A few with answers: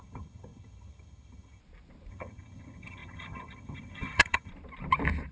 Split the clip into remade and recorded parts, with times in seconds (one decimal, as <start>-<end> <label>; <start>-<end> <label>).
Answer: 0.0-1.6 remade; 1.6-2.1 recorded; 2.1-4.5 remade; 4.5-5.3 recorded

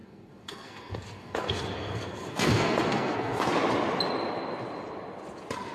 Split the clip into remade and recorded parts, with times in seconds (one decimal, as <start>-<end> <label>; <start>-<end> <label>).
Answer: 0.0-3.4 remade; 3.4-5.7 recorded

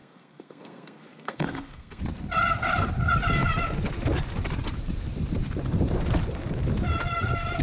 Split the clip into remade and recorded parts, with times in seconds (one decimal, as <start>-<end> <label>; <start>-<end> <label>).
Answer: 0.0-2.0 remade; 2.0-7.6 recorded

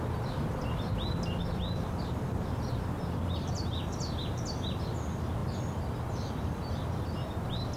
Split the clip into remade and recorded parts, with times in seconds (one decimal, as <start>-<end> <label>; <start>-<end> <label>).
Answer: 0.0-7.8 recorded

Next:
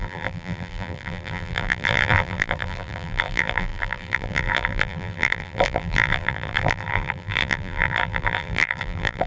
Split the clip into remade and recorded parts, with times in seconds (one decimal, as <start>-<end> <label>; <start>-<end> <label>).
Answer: 0.0-9.3 remade

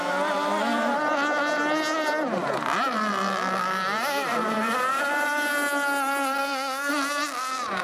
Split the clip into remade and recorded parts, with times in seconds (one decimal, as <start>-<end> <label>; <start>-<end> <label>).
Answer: 0.0-6.4 recorded; 6.4-6.9 remade; 6.9-7.8 recorded